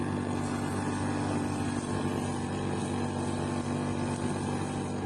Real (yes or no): yes